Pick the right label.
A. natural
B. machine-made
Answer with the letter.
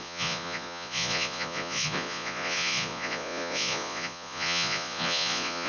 B